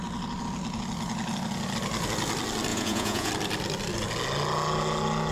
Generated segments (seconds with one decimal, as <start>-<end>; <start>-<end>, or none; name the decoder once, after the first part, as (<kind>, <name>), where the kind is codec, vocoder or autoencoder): 2.7-3.3 (vocoder, Vocos)